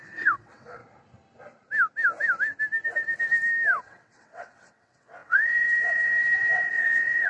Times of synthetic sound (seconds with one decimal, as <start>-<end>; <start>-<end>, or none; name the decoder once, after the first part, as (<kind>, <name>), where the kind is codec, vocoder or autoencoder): 0.0-0.8 (vocoder, WaveNeXt); 3.8-7.3